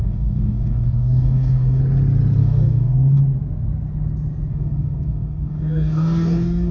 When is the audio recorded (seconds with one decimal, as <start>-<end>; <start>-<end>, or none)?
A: 1.8-2.4; 3.2-4.5

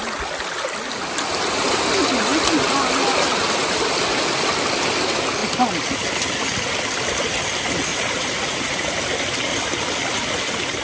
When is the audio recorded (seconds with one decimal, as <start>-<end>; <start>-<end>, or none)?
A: 0.0-7.9; 9.0-10.8

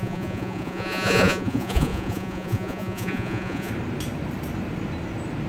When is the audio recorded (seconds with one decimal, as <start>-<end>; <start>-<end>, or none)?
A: 3.7-5.5